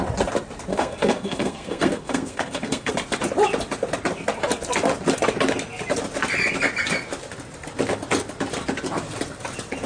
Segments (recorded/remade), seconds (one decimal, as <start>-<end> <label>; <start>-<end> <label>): 0.0-0.7 recorded; 0.7-2.9 remade; 2.9-9.9 recorded